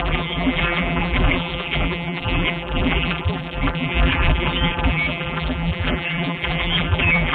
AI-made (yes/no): yes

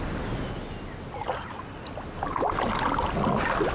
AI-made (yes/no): no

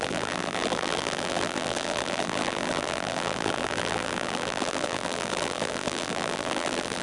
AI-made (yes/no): yes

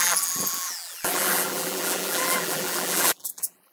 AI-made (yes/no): yes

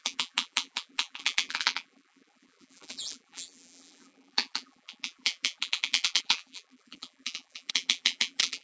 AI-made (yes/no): yes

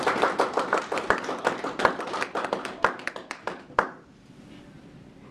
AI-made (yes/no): yes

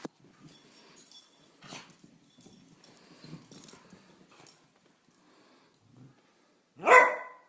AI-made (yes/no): no